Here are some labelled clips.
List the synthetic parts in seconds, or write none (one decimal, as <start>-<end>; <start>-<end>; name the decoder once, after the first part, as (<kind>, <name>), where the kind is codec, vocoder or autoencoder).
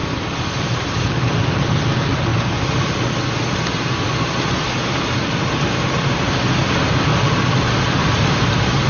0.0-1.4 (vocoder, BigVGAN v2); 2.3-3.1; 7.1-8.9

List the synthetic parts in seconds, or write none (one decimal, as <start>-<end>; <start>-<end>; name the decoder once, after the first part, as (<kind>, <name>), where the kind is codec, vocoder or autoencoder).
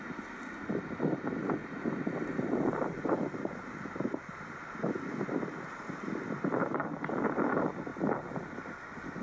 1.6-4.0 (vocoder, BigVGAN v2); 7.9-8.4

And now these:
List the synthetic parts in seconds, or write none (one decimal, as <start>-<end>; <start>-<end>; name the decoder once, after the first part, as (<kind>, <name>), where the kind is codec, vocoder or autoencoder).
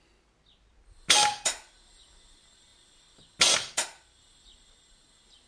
none